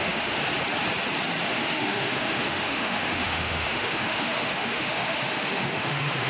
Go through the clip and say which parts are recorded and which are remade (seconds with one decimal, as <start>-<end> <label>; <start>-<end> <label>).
0.0-0.4 remade; 0.4-1.4 recorded; 1.4-6.3 remade